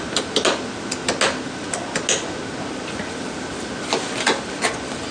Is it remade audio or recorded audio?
recorded